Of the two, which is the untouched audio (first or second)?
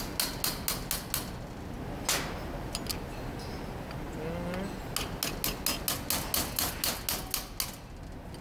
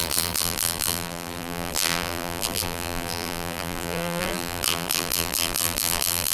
first